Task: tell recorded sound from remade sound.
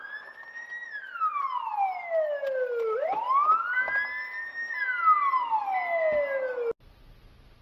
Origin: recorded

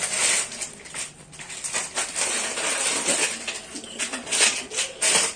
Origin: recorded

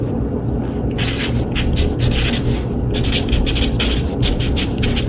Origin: recorded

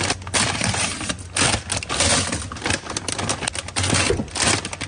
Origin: recorded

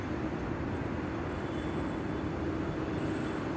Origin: recorded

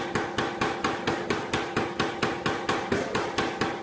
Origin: recorded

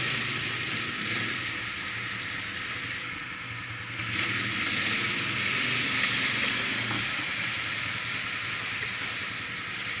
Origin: recorded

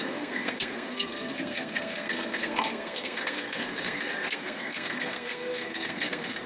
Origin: remade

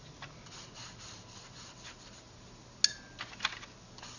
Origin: recorded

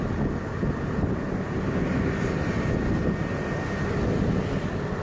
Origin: recorded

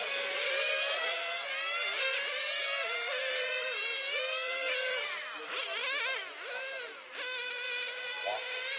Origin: recorded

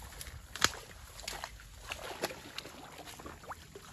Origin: recorded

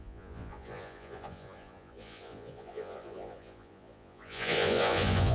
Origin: remade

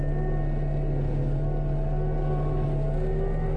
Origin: recorded